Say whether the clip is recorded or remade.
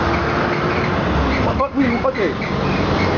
recorded